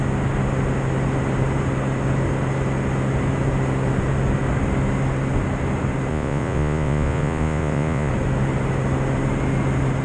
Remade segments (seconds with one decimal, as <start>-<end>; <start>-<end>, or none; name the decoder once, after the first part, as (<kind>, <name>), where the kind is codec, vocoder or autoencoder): 6.1-8.1 (vocoder, Vocos)